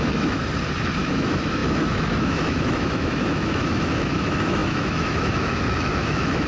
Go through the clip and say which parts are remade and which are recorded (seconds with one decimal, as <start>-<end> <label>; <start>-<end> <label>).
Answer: 0.0-0.4 remade; 0.4-1.0 recorded; 1.0-6.5 remade